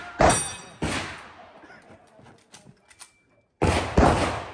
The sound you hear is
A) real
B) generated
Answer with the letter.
A